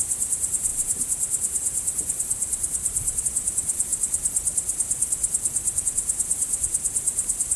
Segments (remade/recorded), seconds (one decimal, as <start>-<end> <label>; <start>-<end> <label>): 0.0-3.9 remade; 3.9-5.8 recorded; 5.8-7.6 remade